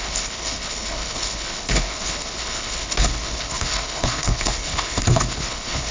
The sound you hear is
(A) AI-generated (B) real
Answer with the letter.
A